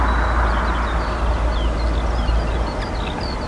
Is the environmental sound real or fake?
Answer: real